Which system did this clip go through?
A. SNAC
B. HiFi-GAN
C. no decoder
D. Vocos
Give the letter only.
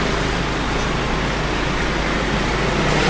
C